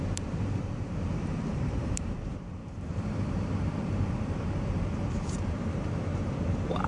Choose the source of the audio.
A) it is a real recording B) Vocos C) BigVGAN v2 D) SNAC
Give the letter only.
C